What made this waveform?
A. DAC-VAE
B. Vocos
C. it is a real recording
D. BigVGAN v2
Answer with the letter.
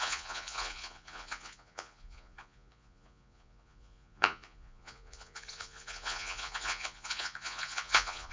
B